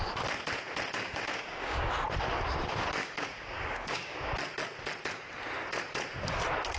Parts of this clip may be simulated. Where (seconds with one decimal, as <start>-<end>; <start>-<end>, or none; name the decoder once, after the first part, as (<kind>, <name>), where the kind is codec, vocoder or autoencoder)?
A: 0.9-1.9 (codec, DAC); 3.0-4.3